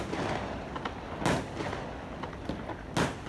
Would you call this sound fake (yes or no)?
no